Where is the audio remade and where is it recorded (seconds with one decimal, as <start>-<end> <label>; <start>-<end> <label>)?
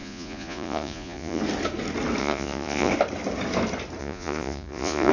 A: 0.0-1.4 remade; 1.4-2.2 recorded; 2.2-2.9 remade; 2.9-4.0 recorded; 4.0-5.1 remade